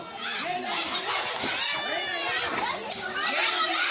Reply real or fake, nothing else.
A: real